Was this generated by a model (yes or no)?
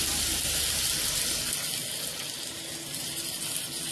no